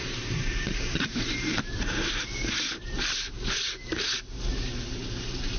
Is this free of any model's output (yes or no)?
no